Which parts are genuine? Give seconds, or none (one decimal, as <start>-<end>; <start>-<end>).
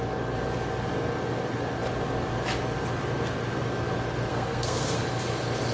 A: 0.0-4.3; 5.0-5.7